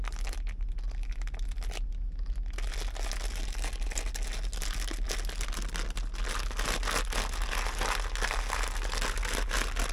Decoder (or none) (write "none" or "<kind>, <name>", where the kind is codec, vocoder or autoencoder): none